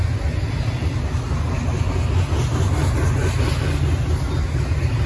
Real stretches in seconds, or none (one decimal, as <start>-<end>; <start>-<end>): 0.0-5.1